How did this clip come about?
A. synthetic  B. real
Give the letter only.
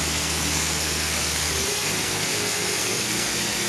A